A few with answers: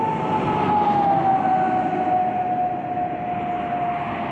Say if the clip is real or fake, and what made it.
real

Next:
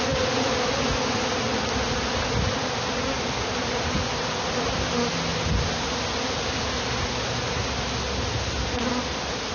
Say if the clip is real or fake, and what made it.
real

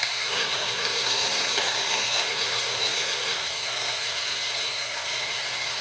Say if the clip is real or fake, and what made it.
fake, codec, SNAC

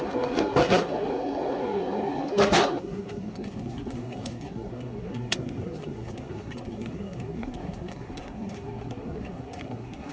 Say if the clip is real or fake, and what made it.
fake, codec, SNAC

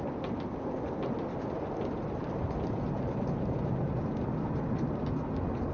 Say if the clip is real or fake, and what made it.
real